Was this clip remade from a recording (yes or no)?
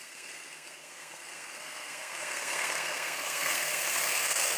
yes